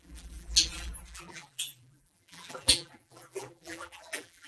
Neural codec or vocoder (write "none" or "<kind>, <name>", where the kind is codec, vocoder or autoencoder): vocoder, BigVGAN v2